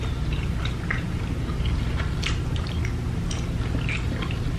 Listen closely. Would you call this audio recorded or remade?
remade